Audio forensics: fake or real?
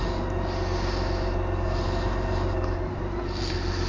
real